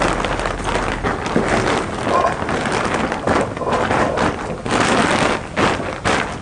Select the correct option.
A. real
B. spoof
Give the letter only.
A